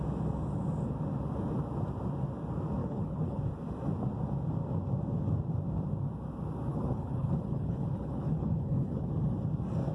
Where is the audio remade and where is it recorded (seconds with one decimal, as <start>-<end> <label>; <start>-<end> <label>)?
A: 0.0-2.8 recorded; 2.8-3.4 remade; 3.4-6.7 recorded; 6.7-9.1 remade; 9.1-9.9 recorded